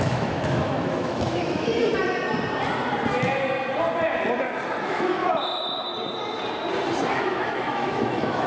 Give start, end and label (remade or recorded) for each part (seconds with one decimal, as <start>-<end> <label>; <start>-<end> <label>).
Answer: 0.0-1.7 remade; 1.7-4.8 recorded; 4.8-5.2 remade; 5.2-7.1 recorded; 7.1-8.5 remade